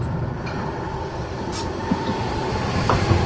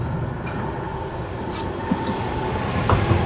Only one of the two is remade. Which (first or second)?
first